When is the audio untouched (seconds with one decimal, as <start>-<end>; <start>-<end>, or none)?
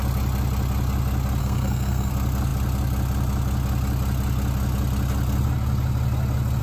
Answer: 0.0-1.4; 2.1-6.6